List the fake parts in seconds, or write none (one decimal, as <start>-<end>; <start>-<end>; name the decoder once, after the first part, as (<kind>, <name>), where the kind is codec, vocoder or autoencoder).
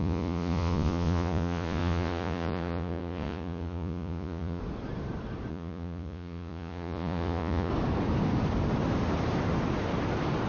0.0-4.6 (vocoder, Vocos); 5.5-7.7